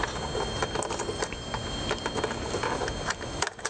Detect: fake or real real